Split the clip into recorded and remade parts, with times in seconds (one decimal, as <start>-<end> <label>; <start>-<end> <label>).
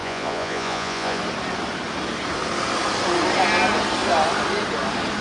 0.0-1.2 remade; 1.2-5.2 recorded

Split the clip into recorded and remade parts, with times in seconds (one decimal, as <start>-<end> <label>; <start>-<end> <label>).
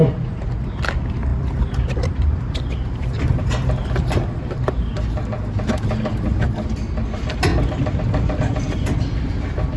0.0-1.3 recorded; 1.3-4.8 remade; 4.8-9.8 recorded